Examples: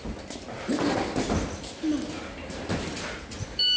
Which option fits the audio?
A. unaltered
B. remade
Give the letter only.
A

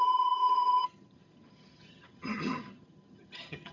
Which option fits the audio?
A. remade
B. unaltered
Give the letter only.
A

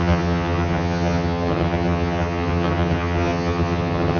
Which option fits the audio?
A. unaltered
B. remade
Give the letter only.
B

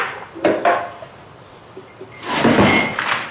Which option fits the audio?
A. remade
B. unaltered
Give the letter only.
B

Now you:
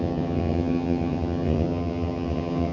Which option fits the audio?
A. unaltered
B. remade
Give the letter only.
B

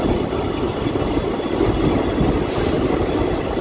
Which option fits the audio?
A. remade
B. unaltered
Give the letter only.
B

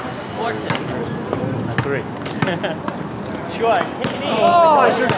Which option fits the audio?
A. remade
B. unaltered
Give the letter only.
B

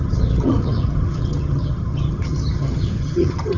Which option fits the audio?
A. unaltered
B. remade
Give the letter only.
B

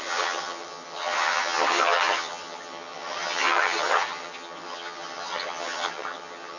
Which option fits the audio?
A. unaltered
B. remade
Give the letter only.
B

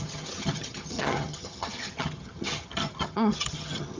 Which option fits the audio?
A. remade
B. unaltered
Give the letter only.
A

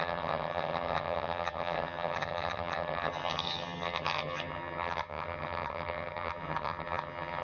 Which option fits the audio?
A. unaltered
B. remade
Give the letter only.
B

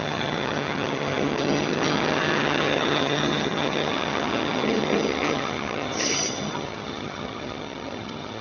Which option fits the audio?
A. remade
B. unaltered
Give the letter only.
A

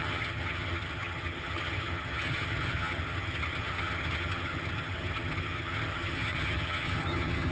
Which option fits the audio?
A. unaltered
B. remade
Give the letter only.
B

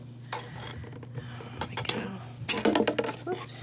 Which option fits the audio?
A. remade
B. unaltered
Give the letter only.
B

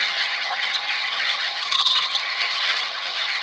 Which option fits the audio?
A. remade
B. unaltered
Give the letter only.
A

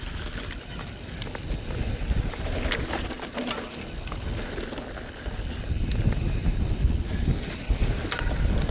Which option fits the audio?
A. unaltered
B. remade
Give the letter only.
A